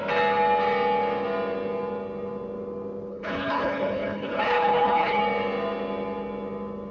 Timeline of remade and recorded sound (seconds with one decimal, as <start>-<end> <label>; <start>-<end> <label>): 0.0-3.1 recorded; 3.1-5.2 remade; 5.2-6.9 recorded